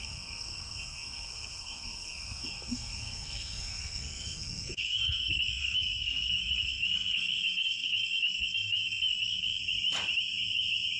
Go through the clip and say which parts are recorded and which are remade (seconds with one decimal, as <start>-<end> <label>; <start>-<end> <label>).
0.0-9.6 remade; 9.6-11.0 recorded